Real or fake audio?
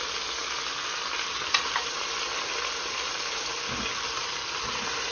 real